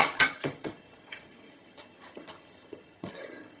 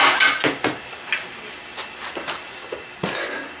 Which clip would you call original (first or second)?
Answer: second